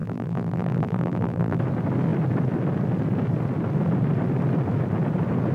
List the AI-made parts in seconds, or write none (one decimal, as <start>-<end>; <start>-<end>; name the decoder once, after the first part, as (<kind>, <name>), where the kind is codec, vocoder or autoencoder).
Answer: 0.0-1.6 (vocoder, BigVGAN v2)